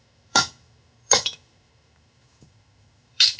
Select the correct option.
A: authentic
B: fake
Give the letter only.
B